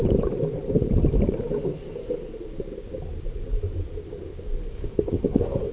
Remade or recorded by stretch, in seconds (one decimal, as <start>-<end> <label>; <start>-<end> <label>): 0.0-4.7 recorded; 4.7-5.7 remade